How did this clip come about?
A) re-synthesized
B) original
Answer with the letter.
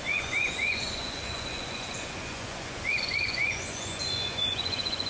A